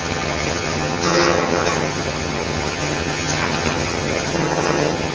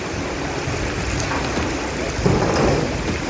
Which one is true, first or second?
second